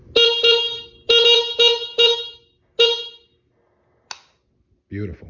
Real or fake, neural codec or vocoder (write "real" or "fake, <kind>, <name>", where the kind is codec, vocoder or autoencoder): real